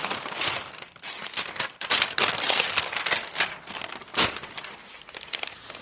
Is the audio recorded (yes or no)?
yes